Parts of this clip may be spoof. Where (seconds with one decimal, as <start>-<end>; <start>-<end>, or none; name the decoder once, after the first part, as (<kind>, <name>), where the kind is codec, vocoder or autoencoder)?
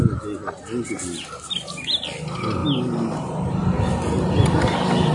none